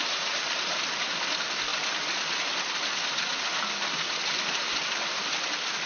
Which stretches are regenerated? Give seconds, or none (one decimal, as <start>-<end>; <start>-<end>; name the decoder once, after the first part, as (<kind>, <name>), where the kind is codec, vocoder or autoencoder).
none